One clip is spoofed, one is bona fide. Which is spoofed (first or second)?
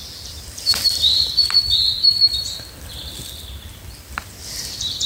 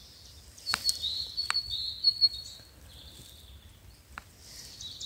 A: first